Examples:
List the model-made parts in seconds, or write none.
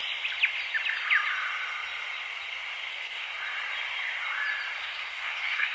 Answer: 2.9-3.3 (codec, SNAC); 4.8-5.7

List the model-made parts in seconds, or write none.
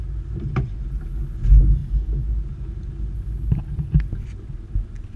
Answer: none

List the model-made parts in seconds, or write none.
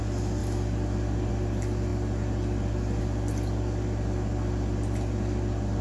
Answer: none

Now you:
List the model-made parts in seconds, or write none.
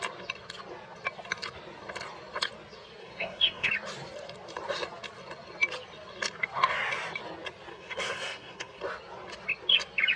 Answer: 3.0-3.7 (codec, SNAC); 7.7-8.8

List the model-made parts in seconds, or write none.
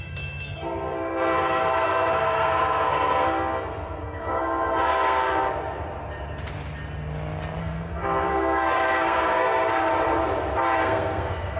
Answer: 0.0-5.2 (codec, SNAC); 7.6-9.7; 10.8-11.6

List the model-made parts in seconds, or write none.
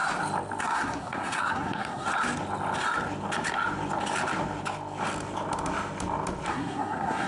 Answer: 0.6-2.1 (codec, SNAC); 6.5-7.3